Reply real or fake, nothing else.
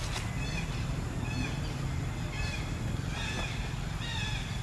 real